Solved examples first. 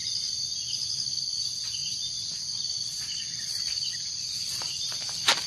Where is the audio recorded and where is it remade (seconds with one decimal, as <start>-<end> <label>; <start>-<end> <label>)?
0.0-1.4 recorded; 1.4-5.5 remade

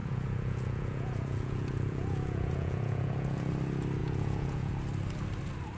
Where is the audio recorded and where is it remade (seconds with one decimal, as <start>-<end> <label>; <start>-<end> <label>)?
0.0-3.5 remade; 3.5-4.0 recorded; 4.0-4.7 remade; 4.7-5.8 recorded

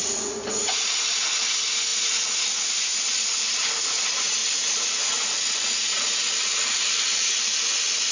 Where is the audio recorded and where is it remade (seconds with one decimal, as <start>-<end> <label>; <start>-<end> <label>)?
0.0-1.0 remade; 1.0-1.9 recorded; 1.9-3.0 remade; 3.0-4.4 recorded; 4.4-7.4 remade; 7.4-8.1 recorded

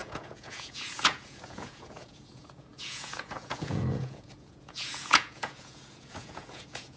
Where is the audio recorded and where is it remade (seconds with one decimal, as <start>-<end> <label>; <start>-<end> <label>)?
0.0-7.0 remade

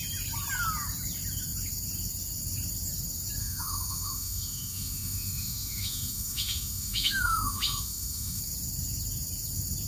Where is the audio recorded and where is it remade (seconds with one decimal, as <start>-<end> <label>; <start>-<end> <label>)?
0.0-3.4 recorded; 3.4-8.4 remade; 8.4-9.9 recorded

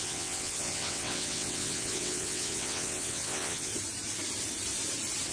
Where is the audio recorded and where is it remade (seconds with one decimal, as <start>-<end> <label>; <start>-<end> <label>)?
0.0-3.7 remade; 3.7-5.3 recorded